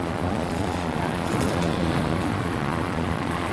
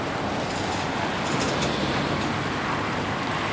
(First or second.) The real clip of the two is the second